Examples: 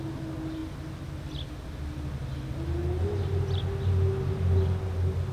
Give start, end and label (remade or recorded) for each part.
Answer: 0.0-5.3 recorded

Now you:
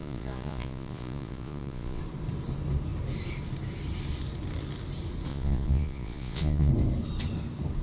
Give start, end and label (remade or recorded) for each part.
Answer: 0.0-2.0 remade; 2.0-5.3 recorded; 5.3-6.7 remade; 6.7-7.8 recorded

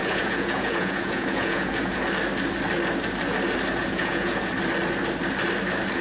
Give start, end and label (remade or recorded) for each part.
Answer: 0.0-2.0 remade; 2.0-3.8 recorded; 3.8-4.5 remade; 4.5-6.0 recorded